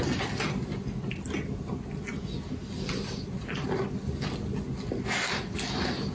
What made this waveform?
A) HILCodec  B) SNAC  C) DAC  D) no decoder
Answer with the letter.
D